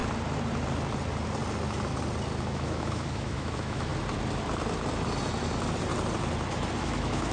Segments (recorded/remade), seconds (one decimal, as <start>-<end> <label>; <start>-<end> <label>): 0.0-2.4 recorded; 2.4-3.9 remade; 3.9-6.8 recorded; 6.8-7.3 remade